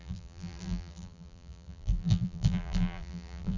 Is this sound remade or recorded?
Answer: remade